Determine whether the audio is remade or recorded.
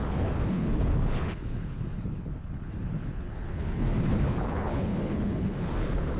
remade